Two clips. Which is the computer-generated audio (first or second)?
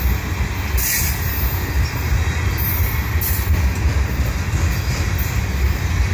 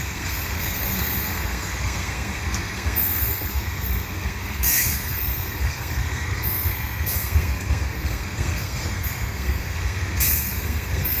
second